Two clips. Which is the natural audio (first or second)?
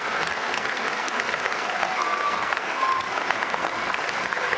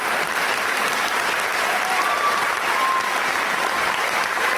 second